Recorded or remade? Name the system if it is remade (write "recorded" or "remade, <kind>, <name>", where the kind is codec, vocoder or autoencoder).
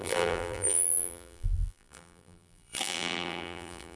remade, vocoder, BigVGAN v2